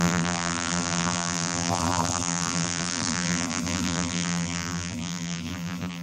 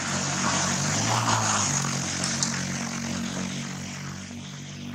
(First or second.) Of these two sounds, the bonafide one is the second